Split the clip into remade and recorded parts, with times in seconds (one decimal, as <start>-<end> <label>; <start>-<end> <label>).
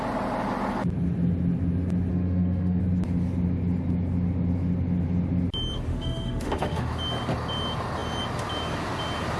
0.0-2.1 recorded; 2.1-2.8 remade; 2.8-5.9 recorded; 5.9-6.9 remade; 6.9-9.4 recorded